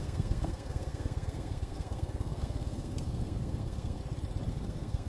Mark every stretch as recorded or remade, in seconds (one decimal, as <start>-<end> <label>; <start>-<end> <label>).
0.0-4.0 remade; 4.0-4.5 recorded; 4.5-5.1 remade